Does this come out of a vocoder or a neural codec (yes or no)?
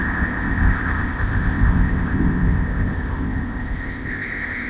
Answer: yes